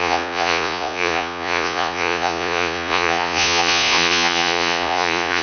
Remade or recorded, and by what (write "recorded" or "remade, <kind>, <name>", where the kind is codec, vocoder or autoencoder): remade, vocoder, Vocos